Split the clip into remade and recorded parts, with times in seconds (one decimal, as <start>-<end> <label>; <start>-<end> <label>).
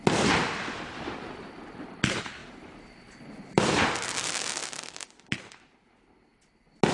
0.0-2.4 recorded; 2.4-3.6 remade; 3.6-6.9 recorded